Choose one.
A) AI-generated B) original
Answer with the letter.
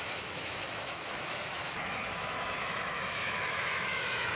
A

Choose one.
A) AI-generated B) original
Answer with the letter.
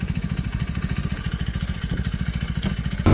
A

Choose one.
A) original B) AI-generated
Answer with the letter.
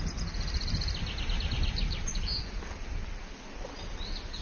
A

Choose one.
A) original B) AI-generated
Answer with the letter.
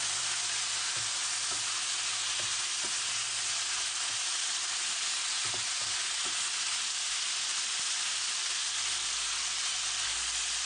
A